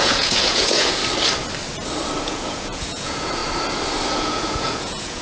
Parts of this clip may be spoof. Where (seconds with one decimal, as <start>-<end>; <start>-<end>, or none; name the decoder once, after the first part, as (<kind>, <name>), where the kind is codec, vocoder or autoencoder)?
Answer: 0.0-1.0 (vocoder, Vocos); 2.2-3.4; 4.2-5.2

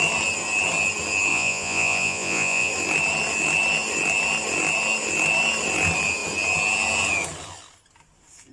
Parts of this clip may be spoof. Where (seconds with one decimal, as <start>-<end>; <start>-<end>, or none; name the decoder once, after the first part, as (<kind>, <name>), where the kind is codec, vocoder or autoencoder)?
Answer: 1.3-2.7 (vocoder, Vocos)

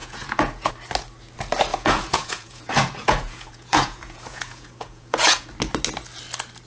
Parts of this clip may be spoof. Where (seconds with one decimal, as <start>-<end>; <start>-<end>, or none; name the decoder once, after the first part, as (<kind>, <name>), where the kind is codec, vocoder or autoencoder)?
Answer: 0.0-0.7 (vocoder, Vocos); 1.7-5.5

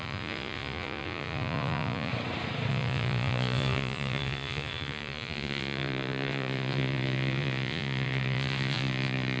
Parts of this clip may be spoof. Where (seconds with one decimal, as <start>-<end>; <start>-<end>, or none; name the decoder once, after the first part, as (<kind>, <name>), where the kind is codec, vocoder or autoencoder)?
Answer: 0.0-2.1 (vocoder, Vocos); 2.7-9.4

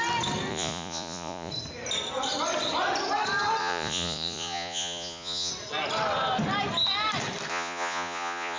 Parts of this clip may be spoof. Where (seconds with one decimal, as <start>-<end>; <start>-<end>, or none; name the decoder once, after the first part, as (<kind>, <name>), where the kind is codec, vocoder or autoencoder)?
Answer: 0.5-1.5 (vocoder, Vocos); 3.6-5.5; 7.5-8.6

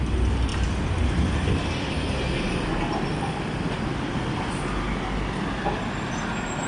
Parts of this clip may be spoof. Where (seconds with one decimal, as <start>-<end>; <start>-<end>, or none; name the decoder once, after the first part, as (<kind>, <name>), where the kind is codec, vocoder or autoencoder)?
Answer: none

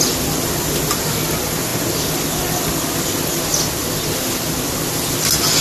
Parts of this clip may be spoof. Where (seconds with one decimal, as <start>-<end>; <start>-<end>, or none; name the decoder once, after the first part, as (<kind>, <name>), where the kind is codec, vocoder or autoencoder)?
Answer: none

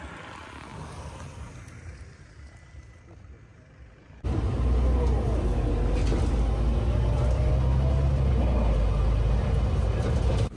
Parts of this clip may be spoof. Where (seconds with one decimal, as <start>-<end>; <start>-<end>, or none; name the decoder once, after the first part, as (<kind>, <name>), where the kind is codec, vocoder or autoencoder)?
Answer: none